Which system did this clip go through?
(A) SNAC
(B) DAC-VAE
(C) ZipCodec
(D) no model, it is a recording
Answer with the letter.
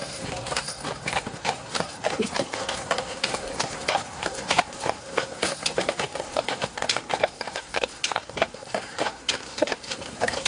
A